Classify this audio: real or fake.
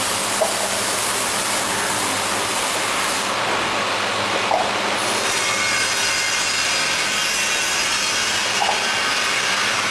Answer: real